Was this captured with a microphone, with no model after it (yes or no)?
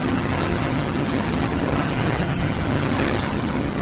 no